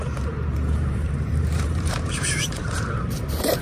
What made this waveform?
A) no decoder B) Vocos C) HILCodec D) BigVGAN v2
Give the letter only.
D